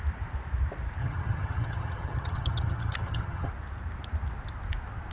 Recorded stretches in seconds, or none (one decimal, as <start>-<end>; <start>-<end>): 0.0-1.0; 3.5-5.1